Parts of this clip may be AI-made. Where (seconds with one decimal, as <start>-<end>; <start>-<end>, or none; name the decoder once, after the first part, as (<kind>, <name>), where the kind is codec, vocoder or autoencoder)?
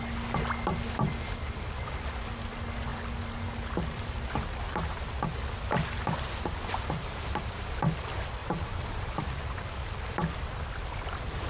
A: 8.4-9.2 (vocoder, Vocos)